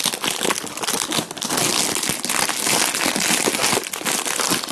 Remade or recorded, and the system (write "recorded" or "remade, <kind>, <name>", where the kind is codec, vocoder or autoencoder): recorded